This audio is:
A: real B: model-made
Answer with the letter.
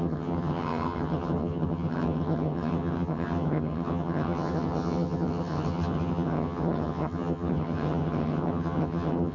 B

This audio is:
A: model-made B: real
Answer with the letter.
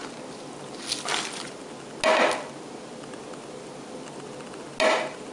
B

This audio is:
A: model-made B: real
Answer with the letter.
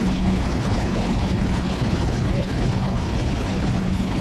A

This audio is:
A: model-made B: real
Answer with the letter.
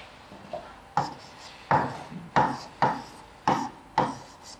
B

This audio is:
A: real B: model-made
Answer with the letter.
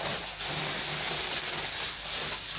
A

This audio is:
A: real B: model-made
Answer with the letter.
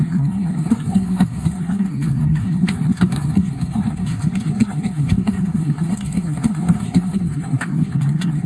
B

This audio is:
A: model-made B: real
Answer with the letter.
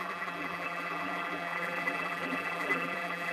A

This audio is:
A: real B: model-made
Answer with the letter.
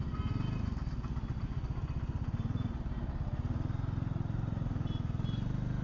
A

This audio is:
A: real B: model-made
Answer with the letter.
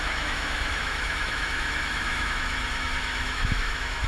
B